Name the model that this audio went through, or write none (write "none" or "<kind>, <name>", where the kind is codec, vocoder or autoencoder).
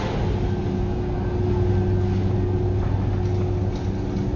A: none